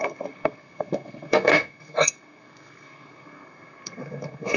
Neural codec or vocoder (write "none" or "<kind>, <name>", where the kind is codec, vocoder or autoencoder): codec, SNAC